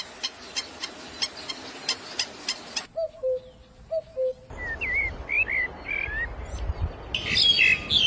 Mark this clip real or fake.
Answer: real